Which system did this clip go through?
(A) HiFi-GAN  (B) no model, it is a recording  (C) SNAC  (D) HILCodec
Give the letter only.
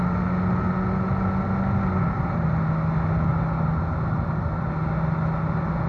B